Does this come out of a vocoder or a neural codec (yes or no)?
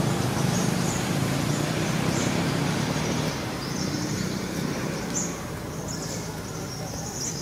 yes